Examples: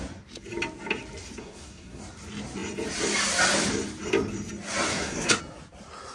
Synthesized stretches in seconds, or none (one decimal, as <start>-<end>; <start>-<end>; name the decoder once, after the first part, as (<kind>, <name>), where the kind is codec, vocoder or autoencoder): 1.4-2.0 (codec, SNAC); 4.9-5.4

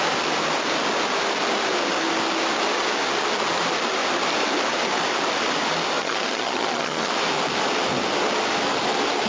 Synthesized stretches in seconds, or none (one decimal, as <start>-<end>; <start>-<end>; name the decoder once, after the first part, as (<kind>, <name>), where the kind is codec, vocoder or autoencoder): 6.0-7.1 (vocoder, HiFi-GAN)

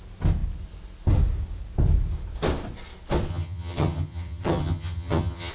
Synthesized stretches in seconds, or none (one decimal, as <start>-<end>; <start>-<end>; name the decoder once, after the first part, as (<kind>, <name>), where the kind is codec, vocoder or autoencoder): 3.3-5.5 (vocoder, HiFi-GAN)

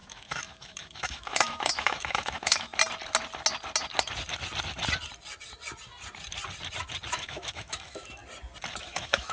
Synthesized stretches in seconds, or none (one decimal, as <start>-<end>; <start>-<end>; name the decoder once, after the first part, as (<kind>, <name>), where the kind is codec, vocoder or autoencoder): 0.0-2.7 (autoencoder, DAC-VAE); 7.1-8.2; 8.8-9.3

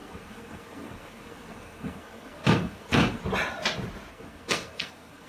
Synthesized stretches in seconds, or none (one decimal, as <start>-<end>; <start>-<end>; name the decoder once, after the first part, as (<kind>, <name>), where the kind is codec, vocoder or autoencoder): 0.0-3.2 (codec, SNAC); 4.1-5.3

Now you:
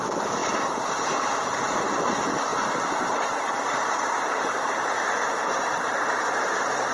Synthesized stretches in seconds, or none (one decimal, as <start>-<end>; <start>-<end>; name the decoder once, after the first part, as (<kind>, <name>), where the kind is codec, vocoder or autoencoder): 0.0-6.9 (vocoder, BigVGAN v2)

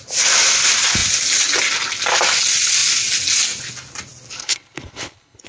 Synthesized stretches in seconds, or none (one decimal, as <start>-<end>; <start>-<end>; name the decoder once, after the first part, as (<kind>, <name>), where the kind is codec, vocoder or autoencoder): 4.4-5.5 (codec, HILCodec)

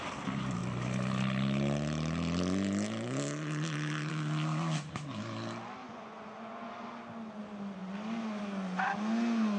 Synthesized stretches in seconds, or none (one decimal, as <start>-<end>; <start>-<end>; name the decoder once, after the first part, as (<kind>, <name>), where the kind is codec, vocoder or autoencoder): 5.8-6.7 (vocoder, Vocos)